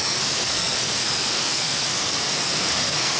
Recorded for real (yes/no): no